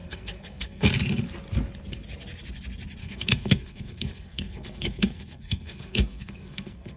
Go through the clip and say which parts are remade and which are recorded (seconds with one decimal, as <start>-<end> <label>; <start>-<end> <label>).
0.0-0.9 remade; 0.9-3.0 recorded; 3.0-7.0 remade

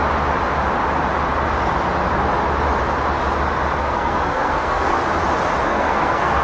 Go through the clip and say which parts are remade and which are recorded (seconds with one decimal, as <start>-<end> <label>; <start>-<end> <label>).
0.0-3.8 recorded; 3.8-5.0 remade; 5.0-5.6 recorded; 5.6-6.4 remade

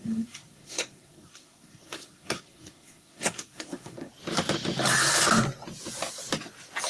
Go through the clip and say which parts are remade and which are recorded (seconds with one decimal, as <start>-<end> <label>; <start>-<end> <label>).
0.0-4.1 remade; 4.1-6.9 recorded

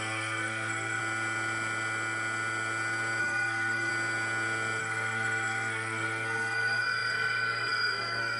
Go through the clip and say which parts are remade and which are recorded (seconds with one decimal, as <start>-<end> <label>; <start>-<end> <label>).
0.0-1.0 remade; 1.0-3.2 recorded; 3.2-3.9 remade; 3.9-4.8 recorded; 4.8-8.4 remade